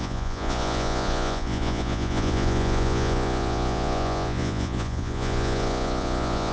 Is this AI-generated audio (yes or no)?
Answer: yes